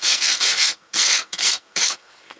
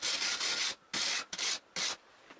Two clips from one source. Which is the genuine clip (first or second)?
second